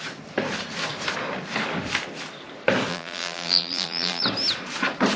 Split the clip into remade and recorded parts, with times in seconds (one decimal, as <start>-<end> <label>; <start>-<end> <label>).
0.0-2.9 recorded; 2.9-4.2 remade; 4.2-5.2 recorded